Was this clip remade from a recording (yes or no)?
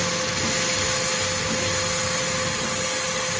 no